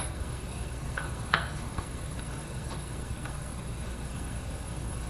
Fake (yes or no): yes